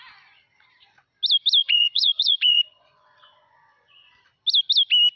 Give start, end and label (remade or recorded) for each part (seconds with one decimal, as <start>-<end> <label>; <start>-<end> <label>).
0.0-1.6 recorded; 1.6-4.2 remade; 4.2-5.2 recorded